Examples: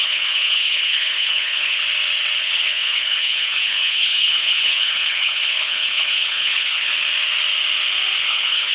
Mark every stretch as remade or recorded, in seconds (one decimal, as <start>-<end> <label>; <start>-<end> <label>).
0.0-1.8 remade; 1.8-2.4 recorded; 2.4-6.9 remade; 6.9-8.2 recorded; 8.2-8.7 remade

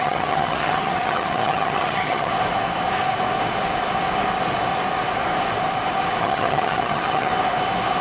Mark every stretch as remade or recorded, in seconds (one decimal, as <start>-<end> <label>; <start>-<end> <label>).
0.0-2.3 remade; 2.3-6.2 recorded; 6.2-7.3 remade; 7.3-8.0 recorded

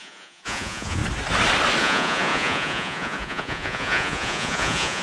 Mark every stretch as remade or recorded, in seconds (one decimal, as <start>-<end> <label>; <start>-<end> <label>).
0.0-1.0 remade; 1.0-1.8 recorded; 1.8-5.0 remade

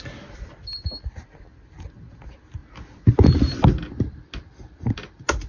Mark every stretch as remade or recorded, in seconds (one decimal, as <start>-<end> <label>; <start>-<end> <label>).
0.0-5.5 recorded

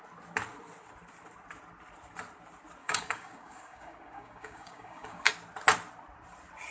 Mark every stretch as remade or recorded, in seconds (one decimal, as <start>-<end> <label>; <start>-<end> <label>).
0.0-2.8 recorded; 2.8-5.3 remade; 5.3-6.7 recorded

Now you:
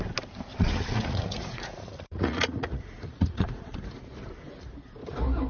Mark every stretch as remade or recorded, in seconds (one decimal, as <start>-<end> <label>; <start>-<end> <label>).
0.0-0.5 recorded; 0.5-3.8 remade; 3.8-5.5 recorded

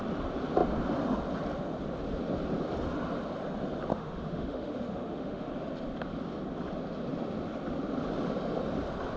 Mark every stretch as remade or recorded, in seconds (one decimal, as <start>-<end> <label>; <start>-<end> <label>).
0.0-3.9 recorded; 3.9-5.5 remade; 5.5-9.2 recorded

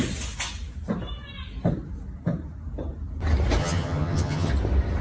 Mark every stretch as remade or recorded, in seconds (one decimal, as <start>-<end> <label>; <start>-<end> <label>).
0.0-3.6 recorded; 3.6-4.5 remade; 4.5-5.0 recorded